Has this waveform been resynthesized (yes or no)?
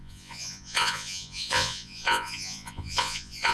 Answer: yes